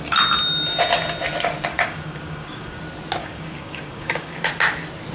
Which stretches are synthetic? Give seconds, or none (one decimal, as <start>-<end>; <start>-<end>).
1.7-2.8; 3.2-4.5